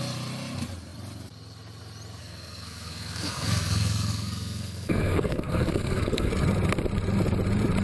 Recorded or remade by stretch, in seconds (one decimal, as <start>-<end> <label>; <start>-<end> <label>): 0.0-2.2 recorded; 2.2-6.3 remade; 6.3-7.8 recorded